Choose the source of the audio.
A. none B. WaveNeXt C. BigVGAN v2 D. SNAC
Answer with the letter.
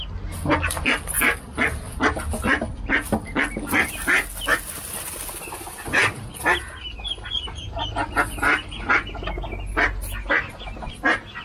A